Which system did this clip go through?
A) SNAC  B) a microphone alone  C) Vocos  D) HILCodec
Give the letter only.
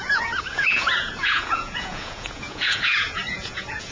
C